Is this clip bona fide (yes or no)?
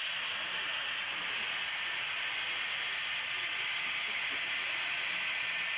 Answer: yes